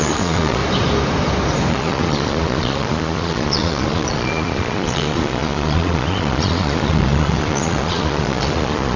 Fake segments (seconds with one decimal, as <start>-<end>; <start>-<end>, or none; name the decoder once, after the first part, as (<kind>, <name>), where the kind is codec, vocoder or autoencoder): 0.0-0.6 (vocoder, Vocos); 1.7-9.0